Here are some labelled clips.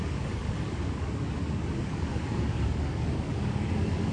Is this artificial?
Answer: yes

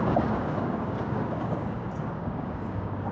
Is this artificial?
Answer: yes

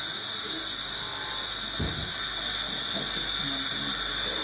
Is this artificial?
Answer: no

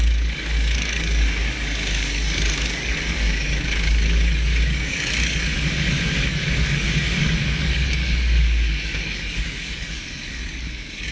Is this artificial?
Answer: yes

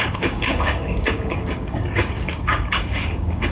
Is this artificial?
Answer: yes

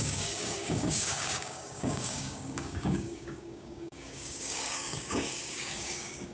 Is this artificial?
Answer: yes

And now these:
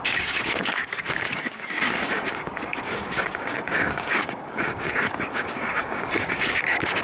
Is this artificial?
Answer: yes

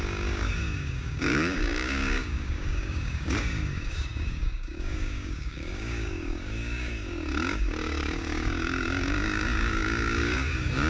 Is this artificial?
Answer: yes